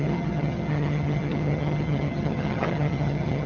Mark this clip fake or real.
fake